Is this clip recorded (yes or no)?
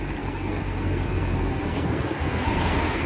no